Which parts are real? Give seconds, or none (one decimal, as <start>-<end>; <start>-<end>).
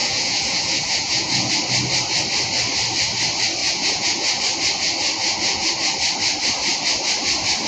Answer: 1.5-3.6; 4.4-5.2; 5.7-7.7